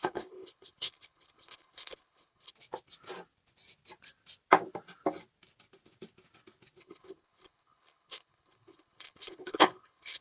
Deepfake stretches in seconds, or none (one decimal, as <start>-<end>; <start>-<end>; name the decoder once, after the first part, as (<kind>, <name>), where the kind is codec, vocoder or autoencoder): 0.0-2.5 (codec, HILCodec); 6.8-10.2